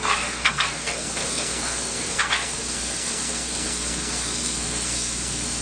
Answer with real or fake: fake